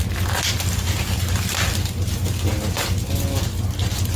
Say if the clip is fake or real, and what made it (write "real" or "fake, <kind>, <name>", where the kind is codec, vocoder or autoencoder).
real